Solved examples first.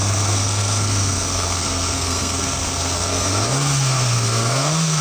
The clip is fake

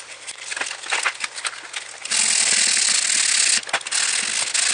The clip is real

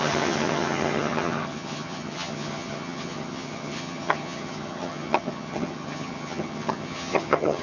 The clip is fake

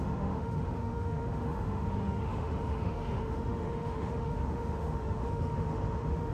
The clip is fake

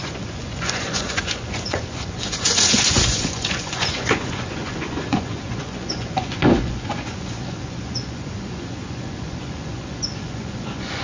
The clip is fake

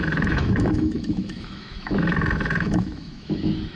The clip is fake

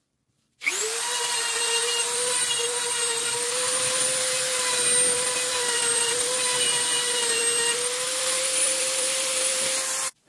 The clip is fake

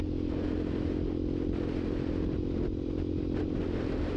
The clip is real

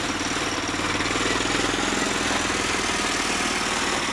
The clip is real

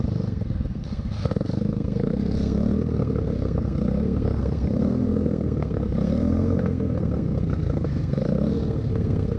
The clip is fake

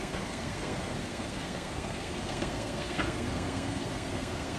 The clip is fake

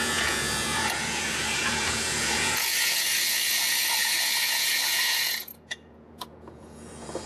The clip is fake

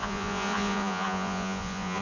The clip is fake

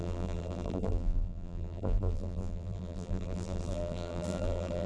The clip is fake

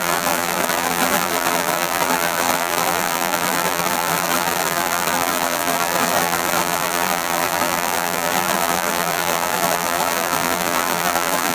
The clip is fake